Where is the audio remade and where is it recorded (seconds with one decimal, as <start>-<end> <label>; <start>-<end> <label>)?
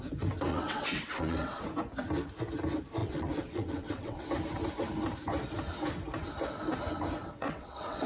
0.0-0.5 recorded; 0.5-1.6 remade; 1.6-3.0 recorded; 3.0-4.3 remade; 4.3-7.3 recorded; 7.3-8.1 remade